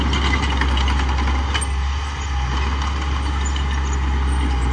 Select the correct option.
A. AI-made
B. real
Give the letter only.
B